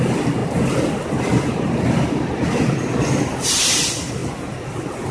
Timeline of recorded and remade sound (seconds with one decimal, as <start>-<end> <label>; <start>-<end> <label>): 0.0-5.1 recorded